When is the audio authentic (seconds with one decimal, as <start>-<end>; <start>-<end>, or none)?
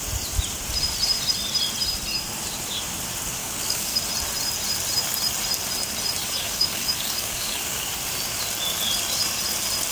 0.0-3.4; 4.0-6.2; 7.9-9.9